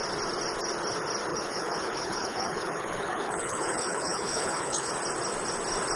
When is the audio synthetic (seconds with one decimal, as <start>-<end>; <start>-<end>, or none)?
1.3-4.9